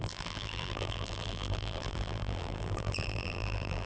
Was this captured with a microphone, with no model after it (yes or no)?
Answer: no